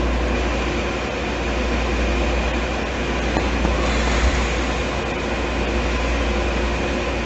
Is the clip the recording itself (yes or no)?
yes